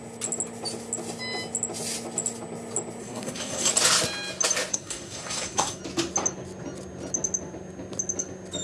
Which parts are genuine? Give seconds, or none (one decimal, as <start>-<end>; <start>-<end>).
0.0-3.0; 3.7-4.7; 5.8-8.6